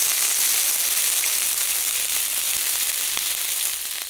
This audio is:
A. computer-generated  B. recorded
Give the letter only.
B